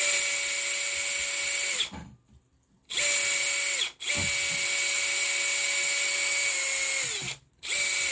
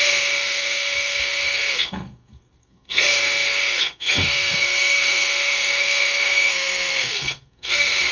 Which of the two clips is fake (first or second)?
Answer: second